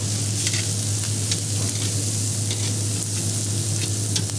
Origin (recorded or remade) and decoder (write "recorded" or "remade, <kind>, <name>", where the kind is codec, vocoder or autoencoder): recorded